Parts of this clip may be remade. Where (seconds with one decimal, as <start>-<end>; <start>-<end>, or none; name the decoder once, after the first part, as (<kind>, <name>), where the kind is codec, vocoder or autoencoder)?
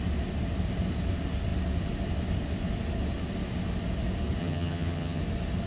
4.4-5.2 (vocoder, HiFi-GAN)